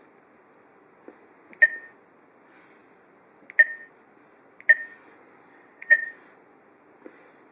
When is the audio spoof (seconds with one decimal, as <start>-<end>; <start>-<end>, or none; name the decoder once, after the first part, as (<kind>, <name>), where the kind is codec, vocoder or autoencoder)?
5.5-6.1 (vocoder, WaveNeXt)